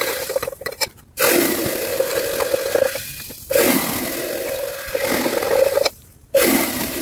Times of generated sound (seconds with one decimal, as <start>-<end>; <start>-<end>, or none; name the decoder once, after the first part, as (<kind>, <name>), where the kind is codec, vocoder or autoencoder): 0.0-1.9 (vocoder, BigVGAN v2); 5.9-7.0